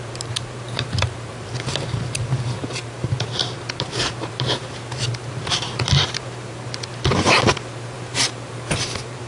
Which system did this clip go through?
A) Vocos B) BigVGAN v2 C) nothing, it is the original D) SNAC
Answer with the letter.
B